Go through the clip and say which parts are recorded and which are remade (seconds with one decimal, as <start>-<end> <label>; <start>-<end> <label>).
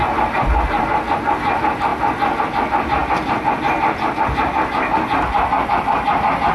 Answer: 0.0-6.5 recorded